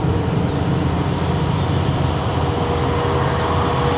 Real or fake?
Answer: real